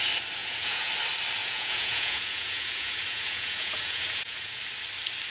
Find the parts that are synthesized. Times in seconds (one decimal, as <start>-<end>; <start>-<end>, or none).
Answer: 0.4-0.9; 1.4-4.6